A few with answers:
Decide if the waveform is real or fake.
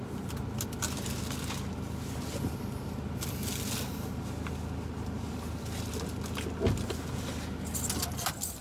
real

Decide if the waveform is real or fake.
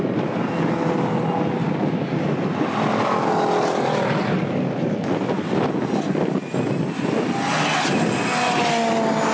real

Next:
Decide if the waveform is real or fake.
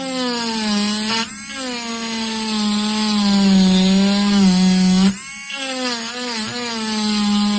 real